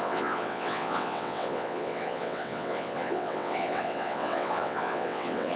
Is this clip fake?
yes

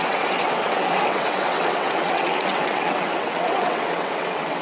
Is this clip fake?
yes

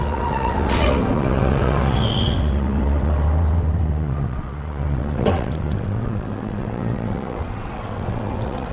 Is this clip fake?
yes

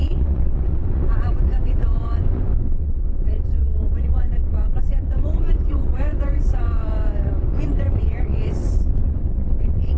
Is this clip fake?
yes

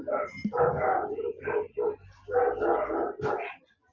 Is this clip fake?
no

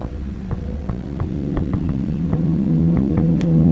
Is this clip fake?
yes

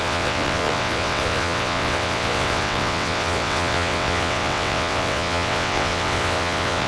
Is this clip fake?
yes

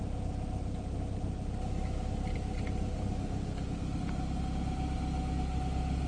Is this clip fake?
no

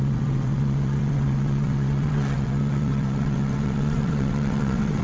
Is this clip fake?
yes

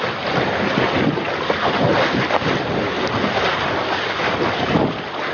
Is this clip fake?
no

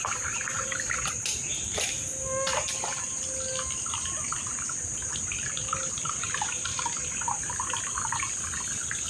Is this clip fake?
no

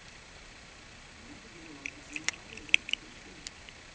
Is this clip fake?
no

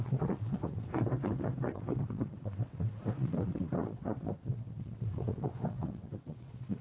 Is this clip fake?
yes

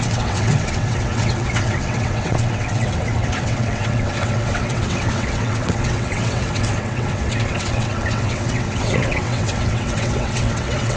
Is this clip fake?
yes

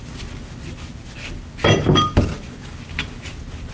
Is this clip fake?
no